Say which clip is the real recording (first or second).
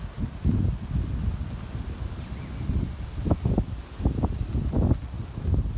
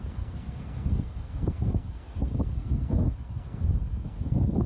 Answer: first